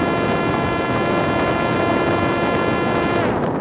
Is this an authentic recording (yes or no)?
yes